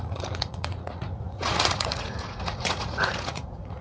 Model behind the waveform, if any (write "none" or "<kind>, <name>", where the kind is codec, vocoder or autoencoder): vocoder, Vocos